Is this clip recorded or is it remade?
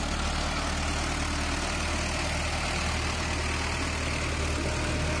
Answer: recorded